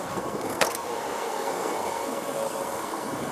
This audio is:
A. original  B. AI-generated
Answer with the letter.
B